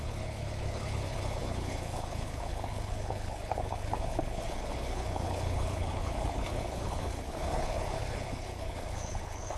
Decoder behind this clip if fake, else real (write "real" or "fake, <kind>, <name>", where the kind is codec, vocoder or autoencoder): fake, codec, HILCodec